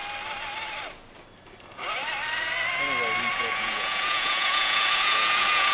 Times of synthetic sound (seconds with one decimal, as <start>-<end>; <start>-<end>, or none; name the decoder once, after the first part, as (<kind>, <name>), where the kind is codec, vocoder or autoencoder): 3.4-5.7 (vocoder, Vocos)